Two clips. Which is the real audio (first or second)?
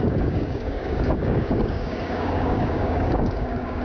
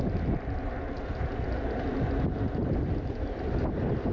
second